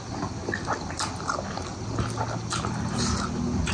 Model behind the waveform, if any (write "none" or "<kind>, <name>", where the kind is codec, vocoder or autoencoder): none